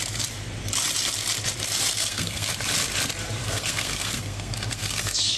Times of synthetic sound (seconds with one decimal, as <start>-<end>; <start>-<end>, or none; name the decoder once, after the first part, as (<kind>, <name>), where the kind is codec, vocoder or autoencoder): 1.9-2.5 (codec, SNAC); 3.4-5.4